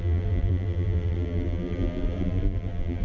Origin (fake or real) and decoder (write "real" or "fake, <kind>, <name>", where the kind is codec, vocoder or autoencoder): fake, vocoder, BigVGAN v2